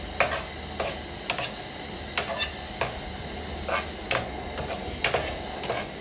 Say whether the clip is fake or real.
real